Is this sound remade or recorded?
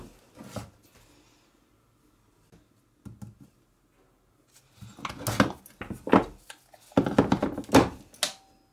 recorded